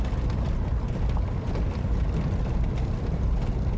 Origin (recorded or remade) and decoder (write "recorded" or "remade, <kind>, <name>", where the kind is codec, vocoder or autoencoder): recorded